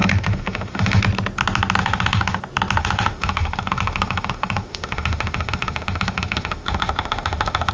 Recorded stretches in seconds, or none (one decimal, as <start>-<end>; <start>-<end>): 1.0-1.8; 2.4-2.8